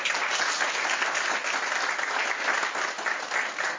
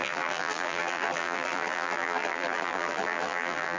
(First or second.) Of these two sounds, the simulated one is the second